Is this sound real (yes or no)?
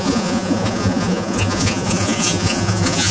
no